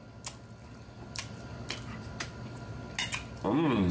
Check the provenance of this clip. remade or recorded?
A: recorded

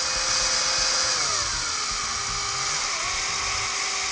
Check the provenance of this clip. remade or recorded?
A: recorded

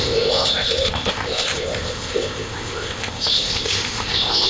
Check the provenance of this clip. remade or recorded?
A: remade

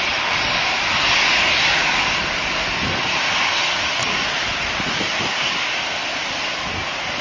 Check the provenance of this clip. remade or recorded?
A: recorded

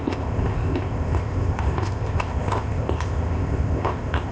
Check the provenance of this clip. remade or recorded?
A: remade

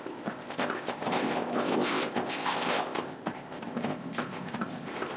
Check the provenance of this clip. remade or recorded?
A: remade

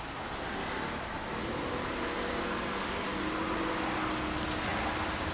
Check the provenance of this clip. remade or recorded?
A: recorded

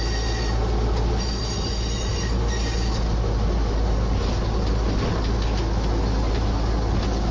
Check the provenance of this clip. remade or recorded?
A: recorded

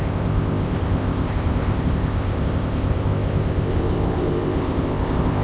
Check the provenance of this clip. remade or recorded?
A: remade